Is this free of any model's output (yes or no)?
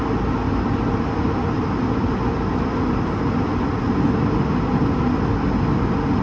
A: yes